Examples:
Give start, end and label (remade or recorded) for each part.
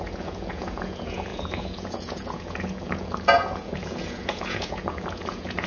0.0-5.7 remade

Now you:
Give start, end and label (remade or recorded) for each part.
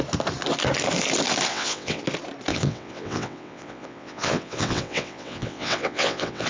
0.0-1.5 recorded; 1.5-2.0 remade; 2.0-2.5 recorded; 2.5-6.5 remade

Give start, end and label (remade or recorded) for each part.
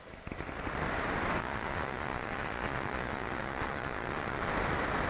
0.0-1.4 recorded; 1.4-4.5 remade; 4.5-5.1 recorded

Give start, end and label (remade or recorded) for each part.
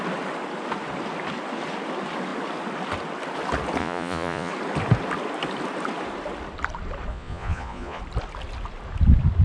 0.0-3.8 recorded; 3.8-4.5 remade; 4.5-7.1 recorded; 7.1-8.0 remade; 8.0-9.4 recorded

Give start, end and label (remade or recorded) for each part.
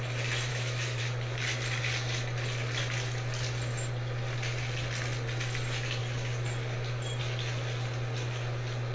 0.0-0.5 recorded; 0.5-1.0 remade; 1.0-8.9 recorded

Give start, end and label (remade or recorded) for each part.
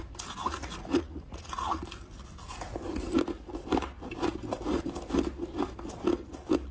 0.0-0.4 recorded; 0.4-1.8 remade; 1.8-6.7 recorded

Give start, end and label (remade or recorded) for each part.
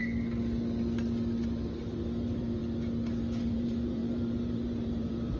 0.0-1.8 recorded; 1.8-2.6 remade; 2.6-3.4 recorded; 3.4-5.4 remade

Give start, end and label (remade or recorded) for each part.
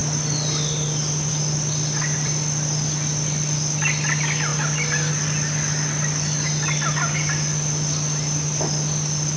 0.0-9.4 recorded